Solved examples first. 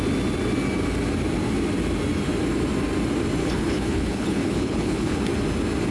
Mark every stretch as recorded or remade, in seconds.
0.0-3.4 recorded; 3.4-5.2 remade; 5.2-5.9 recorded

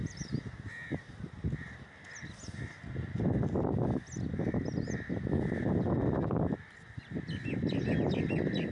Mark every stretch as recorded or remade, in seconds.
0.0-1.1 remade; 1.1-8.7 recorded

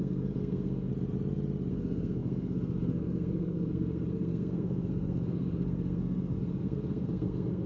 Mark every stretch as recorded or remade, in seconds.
0.0-0.9 remade; 0.9-1.7 recorded; 1.7-7.7 remade

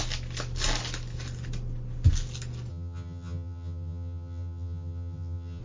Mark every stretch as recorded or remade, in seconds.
0.0-2.7 recorded; 2.7-5.6 remade

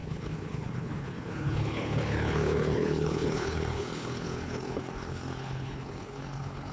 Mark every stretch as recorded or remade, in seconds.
0.0-6.7 remade